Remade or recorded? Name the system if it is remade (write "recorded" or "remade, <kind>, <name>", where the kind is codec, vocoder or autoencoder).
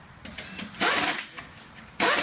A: recorded